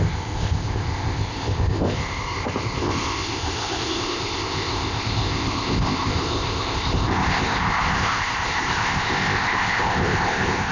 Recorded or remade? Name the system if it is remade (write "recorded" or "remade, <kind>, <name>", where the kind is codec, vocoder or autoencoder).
remade, codec, ZipCodec